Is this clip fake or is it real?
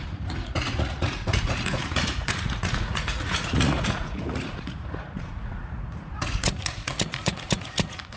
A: fake